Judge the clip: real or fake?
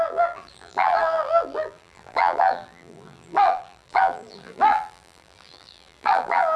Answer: fake